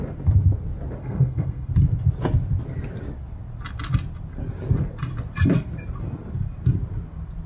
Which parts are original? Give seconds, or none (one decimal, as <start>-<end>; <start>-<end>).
0.0-1.0; 1.7-7.5